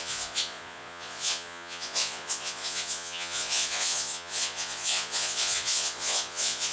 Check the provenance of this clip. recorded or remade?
remade